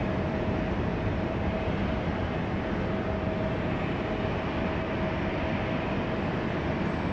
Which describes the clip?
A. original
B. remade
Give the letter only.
A